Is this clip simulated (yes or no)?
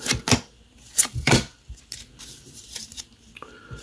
no